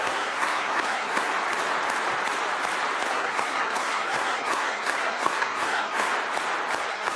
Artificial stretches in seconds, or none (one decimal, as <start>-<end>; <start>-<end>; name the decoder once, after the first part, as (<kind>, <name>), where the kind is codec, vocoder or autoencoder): 0.0-1.3 (codec, SNAC); 3.1-6.1; 6.8-7.2